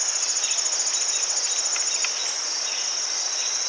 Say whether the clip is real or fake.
real